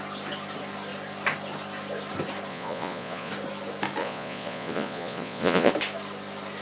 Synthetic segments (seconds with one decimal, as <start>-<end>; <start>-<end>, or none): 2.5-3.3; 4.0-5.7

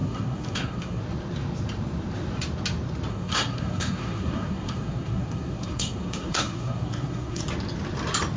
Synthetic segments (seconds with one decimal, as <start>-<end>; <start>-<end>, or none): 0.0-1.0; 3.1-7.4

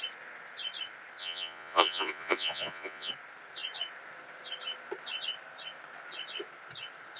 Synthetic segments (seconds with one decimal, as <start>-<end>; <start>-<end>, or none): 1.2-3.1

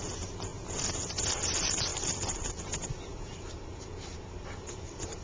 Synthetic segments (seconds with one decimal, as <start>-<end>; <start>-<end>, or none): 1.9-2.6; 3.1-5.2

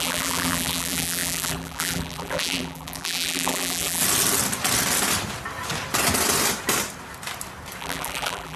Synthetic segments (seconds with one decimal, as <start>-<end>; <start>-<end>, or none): 0.0-4.0; 7.8-8.6

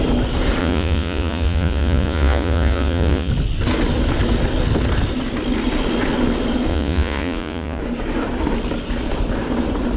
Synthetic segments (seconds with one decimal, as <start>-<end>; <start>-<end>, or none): 0.6-3.3; 6.7-7.8

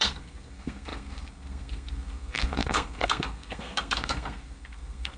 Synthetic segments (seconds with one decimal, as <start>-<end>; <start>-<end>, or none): 0.0-5.2